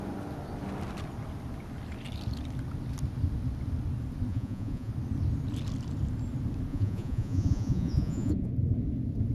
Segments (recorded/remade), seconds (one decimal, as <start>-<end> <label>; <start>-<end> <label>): 0.0-4.3 recorded; 4.3-4.9 remade; 4.9-6.7 recorded; 6.7-8.5 remade; 8.5-9.3 recorded